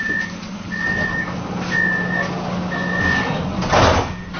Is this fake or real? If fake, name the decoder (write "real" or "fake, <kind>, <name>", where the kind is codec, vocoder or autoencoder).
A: real